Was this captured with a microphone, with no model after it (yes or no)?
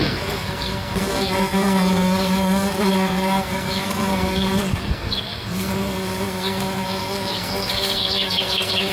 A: no